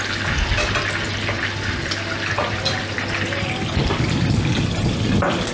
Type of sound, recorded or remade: recorded